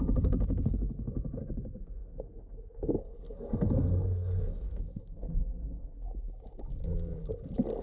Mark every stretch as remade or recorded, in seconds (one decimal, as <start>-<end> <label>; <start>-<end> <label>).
0.0-6.1 remade; 6.1-7.8 recorded